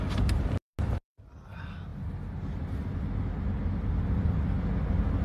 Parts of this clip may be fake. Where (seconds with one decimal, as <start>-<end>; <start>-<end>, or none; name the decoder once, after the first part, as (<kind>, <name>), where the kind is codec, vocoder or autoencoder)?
none